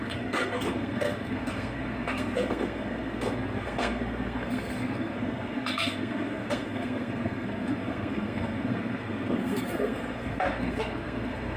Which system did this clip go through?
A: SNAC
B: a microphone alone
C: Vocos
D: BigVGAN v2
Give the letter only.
A